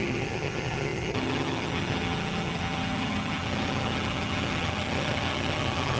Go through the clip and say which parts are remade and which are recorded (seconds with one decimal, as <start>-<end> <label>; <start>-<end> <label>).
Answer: 0.0-6.0 remade